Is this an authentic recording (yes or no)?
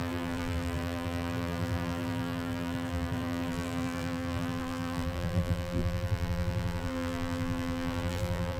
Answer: no